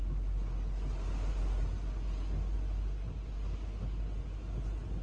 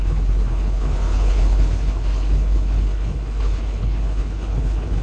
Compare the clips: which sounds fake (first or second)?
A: second